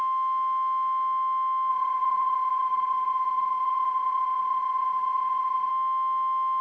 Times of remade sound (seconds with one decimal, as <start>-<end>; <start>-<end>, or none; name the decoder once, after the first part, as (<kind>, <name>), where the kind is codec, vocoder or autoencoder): 1.7-5.7 (vocoder, HiFi-GAN)